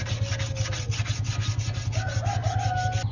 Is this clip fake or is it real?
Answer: real